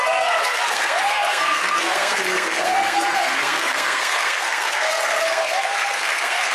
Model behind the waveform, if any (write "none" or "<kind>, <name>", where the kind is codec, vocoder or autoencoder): codec, SNAC